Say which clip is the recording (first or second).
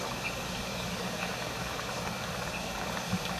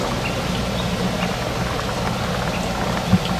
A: second